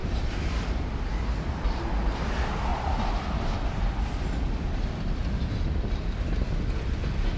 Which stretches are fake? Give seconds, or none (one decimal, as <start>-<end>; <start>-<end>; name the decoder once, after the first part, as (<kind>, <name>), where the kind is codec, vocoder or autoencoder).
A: 0.0-0.8 (vocoder, BigVGAN v2); 2.7-4.2